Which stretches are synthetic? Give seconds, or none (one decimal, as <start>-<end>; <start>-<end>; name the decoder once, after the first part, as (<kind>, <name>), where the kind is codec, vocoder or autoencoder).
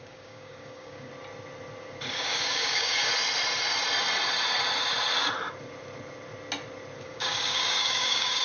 0.0-1.1 (codec, DAC); 2.1-3.1; 7.0-8.4